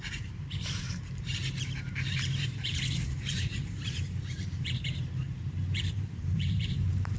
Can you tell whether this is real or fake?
fake